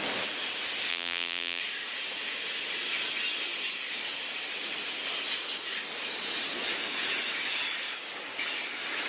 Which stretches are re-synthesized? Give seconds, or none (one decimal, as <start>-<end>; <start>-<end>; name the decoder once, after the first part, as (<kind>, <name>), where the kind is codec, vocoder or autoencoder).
0.9-1.6 (vocoder, BigVGAN v2)